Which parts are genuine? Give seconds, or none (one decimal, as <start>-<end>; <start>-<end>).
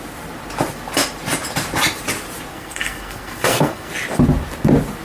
0.0-2.5; 3.9-5.0